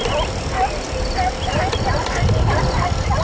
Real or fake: real